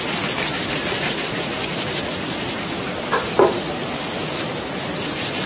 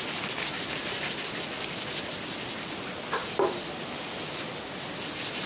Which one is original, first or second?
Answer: second